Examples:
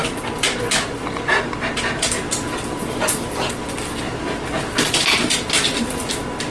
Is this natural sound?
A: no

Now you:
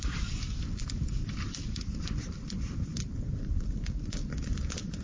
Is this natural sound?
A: no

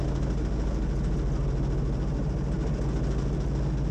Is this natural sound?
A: yes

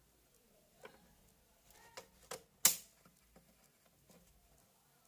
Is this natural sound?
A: yes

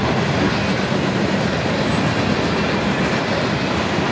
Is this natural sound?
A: yes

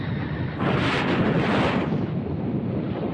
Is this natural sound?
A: no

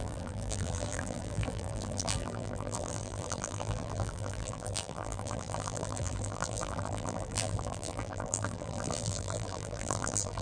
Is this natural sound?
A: no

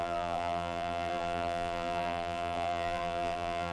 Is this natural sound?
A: no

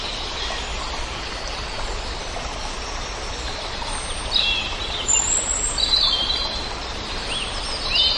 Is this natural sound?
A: yes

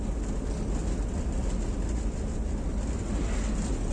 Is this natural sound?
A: yes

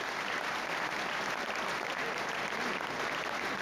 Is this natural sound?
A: yes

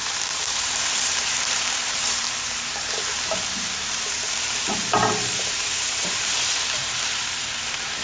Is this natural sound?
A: no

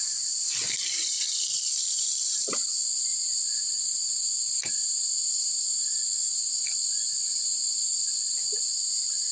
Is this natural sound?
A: no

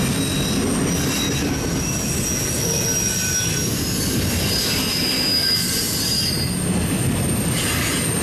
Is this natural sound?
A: yes